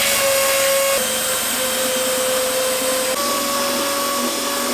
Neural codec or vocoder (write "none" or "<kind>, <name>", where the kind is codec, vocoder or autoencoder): none